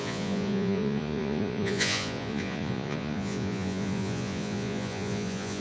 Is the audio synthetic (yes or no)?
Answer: yes